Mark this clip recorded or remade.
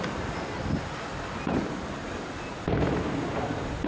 recorded